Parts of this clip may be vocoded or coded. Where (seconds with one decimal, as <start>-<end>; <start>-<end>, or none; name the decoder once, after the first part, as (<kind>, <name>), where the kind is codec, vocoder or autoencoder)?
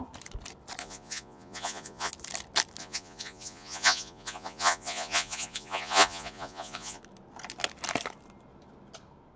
0.8-2.1 (vocoder, Vocos); 2.8-7.0